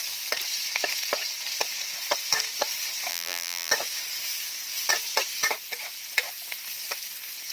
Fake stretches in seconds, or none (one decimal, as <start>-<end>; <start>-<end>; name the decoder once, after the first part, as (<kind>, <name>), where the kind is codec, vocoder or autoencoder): 3.1-3.7 (vocoder, BigVGAN v2)